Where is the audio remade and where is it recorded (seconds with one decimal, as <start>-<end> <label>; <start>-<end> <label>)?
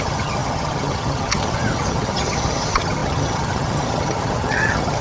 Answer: 0.0-5.0 remade